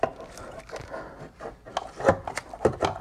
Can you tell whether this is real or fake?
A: real